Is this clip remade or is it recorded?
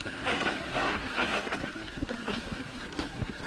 remade